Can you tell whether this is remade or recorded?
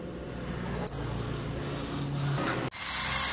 recorded